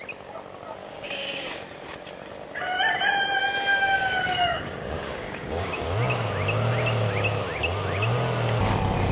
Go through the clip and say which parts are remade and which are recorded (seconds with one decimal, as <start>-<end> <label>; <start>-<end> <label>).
0.0-0.8 recorded; 0.8-1.5 remade; 1.5-3.7 recorded; 3.7-5.8 remade; 5.8-9.1 recorded